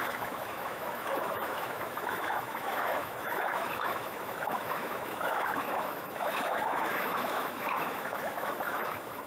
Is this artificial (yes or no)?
yes